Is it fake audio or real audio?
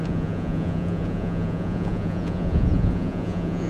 fake